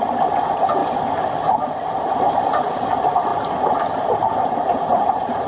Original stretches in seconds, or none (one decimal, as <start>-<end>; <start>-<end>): 0.8-2.0; 3.3-4.0

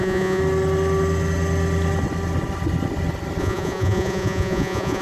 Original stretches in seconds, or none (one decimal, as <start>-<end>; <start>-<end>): 0.4-3.4

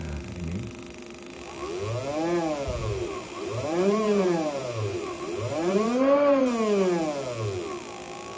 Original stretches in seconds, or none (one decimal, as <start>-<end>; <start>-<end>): 0.0-2.8; 6.5-8.4

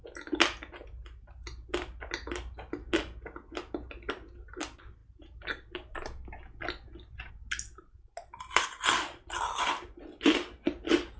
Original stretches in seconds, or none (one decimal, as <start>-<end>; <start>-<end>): 0.0-11.2

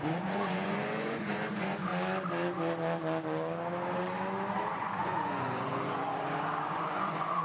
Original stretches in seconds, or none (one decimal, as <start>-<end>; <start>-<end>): 1.9-4.7; 6.1-6.7

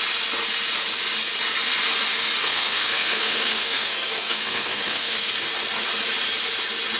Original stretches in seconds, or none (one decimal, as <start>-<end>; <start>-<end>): 0.0-2.4; 5.3-7.0

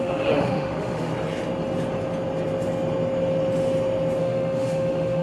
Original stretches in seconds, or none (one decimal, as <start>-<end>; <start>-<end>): 1.1-4.2